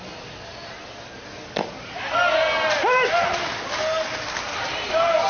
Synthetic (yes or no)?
no